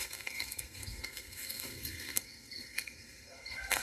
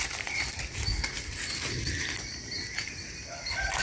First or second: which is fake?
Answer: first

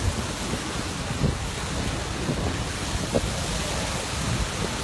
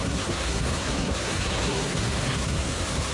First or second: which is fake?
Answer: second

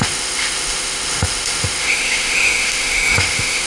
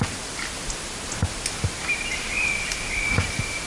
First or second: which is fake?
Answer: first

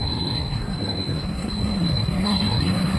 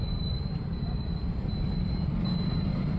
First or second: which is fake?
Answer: first